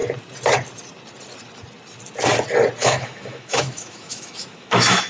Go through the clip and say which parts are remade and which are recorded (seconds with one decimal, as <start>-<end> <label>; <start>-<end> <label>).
0.0-2.8 recorded; 2.8-5.1 remade